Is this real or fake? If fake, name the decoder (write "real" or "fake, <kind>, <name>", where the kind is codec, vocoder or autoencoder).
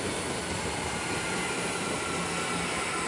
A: real